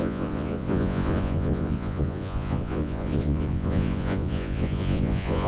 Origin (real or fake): fake